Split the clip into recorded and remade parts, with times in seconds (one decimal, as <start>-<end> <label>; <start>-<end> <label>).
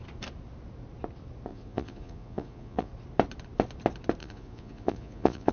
0.0-1.5 recorded; 1.5-2.9 remade; 2.9-4.2 recorded; 4.2-5.5 remade